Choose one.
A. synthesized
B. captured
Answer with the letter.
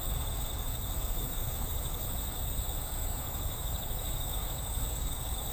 A